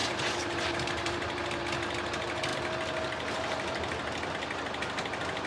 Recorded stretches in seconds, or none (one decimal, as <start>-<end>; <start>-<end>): 1.6-5.5